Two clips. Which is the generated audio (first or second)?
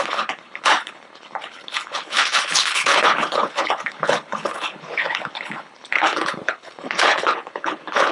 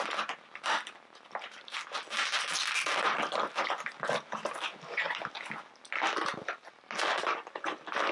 first